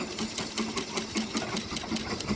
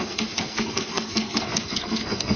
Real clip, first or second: first